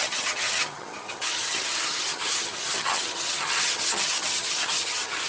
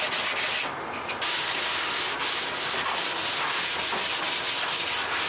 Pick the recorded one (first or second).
second